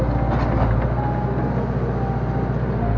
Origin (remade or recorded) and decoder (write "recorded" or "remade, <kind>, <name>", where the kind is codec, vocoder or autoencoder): recorded